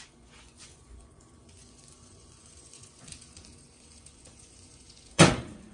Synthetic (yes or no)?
yes